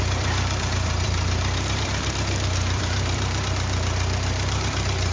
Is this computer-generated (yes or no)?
yes